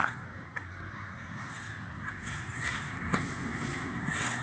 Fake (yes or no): yes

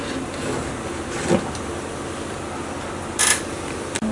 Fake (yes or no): no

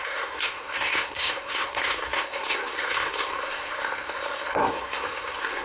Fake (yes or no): yes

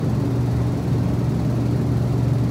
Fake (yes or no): no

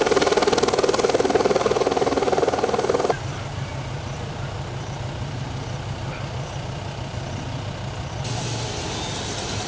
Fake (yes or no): no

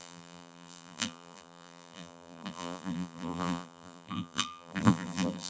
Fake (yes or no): yes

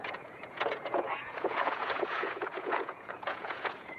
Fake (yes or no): yes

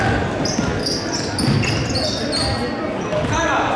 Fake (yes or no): no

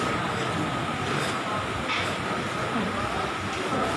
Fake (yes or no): no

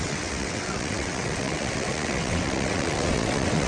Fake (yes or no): yes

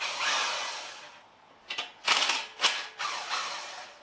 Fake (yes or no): no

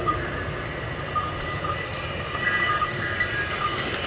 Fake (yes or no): no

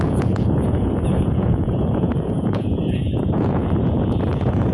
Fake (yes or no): yes